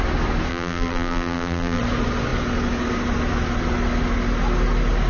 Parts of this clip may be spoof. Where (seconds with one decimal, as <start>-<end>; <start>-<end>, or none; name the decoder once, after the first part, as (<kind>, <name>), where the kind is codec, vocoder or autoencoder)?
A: 0.5-1.8 (vocoder, BigVGAN v2)